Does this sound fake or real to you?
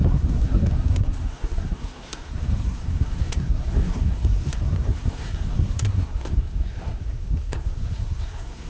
fake